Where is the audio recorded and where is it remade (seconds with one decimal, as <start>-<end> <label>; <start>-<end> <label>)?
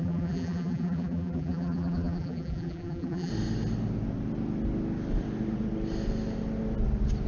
0.0-3.3 remade; 3.3-7.3 recorded